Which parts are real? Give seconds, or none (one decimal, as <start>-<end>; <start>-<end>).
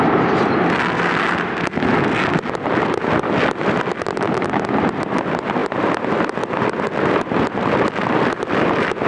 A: 0.0-9.1